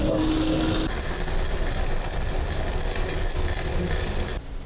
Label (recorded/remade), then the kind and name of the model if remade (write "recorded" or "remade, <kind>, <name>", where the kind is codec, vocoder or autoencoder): recorded